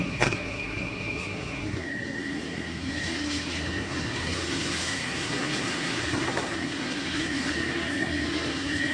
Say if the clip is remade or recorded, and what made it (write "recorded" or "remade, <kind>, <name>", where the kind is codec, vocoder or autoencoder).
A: remade, codec, SNAC